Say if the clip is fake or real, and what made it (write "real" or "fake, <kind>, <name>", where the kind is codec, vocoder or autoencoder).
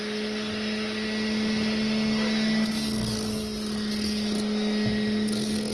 real